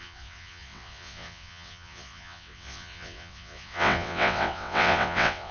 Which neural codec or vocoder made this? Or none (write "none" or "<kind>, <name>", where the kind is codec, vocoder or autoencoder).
vocoder, WaveNeXt